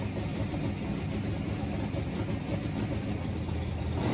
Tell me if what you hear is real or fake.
real